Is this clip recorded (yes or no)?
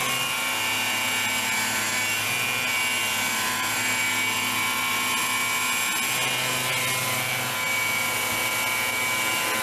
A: yes